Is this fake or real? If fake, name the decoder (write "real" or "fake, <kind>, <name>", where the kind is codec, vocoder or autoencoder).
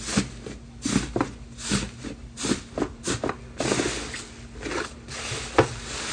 real